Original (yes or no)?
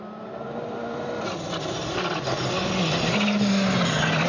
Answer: yes